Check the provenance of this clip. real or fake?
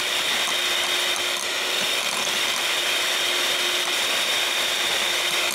real